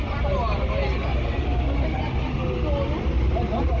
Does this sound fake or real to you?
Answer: real